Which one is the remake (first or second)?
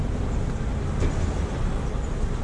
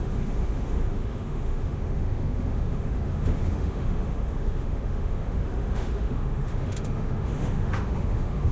second